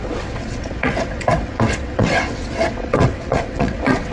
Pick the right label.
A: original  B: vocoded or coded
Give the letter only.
B